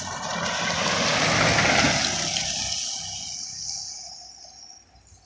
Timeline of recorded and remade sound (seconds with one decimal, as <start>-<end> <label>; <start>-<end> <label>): 0.0-5.3 recorded